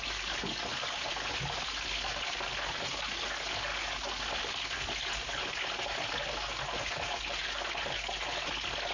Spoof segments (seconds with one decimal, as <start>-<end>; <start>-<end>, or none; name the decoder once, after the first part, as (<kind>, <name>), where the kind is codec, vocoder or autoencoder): none